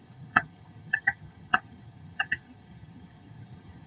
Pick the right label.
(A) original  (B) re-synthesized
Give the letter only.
B